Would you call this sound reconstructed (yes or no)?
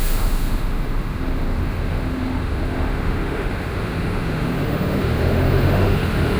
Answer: yes